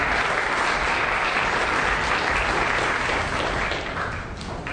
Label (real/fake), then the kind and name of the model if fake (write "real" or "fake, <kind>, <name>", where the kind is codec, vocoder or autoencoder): real